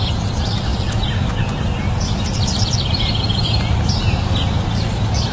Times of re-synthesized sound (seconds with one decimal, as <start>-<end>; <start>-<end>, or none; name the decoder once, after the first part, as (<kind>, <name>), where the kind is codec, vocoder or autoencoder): none